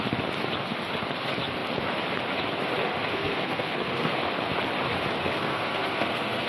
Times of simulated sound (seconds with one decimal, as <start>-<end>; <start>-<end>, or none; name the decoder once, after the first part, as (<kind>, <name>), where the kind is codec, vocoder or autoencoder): 3.1-4.2 (codec, SNAC); 5.2-6.5